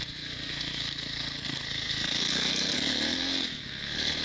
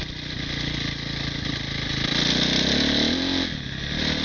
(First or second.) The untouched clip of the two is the second